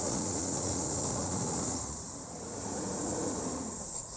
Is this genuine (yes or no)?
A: no